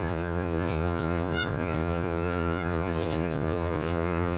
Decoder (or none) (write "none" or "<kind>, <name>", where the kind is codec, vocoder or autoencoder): vocoder, Vocos